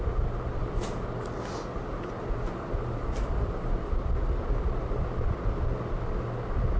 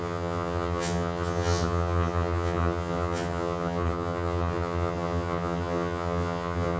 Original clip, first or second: first